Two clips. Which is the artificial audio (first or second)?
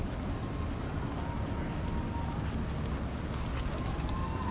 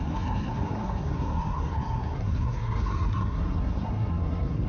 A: second